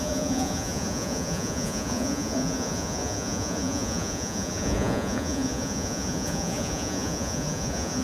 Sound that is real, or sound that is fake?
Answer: fake